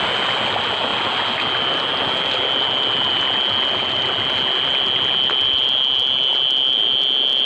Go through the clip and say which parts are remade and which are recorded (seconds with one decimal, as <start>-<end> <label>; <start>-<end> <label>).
0.0-7.5 recorded